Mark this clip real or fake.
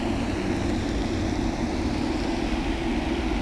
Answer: real